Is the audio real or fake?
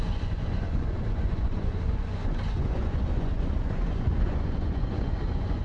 fake